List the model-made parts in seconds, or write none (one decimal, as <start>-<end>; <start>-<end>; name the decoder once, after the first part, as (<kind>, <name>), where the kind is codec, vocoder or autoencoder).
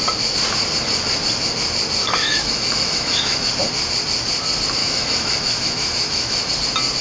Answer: 2.0-3.5 (autoencoder, DAC-VAE); 4.8-6.5